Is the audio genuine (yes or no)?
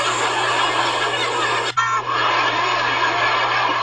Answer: yes